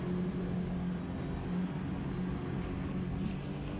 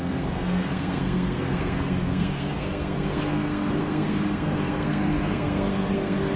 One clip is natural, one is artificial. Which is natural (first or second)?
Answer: first